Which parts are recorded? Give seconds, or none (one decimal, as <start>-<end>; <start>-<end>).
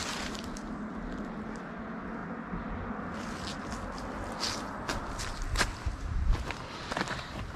0.0-7.6